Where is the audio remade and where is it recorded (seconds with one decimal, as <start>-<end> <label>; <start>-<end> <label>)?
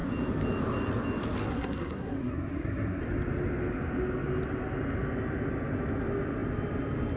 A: 0.0-1.4 recorded; 1.4-3.0 remade; 3.0-7.2 recorded